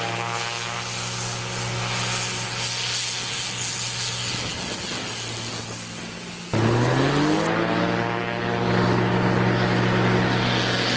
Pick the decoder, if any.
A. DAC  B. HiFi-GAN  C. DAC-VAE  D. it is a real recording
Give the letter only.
D